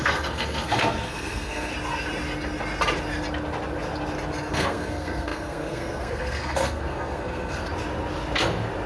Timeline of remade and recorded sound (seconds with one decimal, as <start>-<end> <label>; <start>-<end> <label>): 0.0-1.7 remade; 1.7-4.5 recorded; 4.5-7.7 remade; 7.7-8.9 recorded